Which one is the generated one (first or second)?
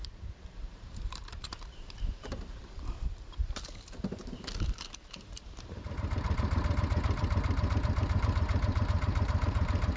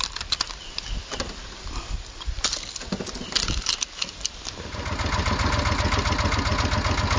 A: first